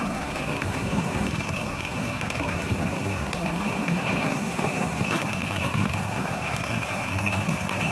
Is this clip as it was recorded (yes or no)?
no